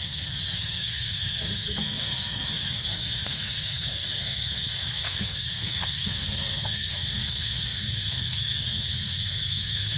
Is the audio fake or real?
fake